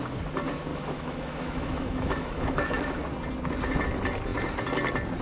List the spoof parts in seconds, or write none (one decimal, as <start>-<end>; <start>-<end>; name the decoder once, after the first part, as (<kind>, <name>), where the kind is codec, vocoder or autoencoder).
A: 0.7-2.9 (autoencoder, DAC-VAE)